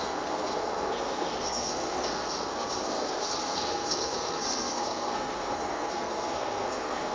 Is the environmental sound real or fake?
fake